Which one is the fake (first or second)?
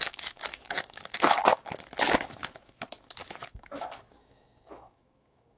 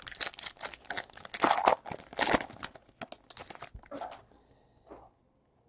first